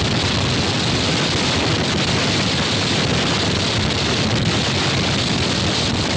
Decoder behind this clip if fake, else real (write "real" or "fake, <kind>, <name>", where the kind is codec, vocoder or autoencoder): real